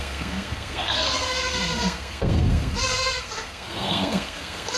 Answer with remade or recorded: remade